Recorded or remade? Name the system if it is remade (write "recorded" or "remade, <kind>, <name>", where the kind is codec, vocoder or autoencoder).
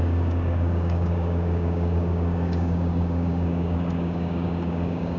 remade, codec, DAC